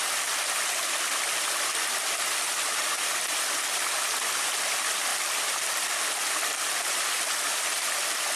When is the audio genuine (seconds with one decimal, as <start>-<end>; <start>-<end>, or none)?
0.0-8.4